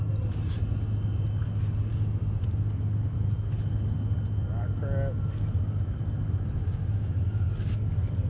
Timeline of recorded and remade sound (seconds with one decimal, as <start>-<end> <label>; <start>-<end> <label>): 0.0-6.6 recorded; 6.6-7.5 remade; 7.5-8.3 recorded